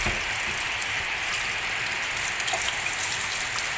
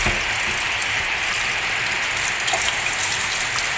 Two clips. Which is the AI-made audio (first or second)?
first